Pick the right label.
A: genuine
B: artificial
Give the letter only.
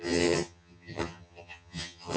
B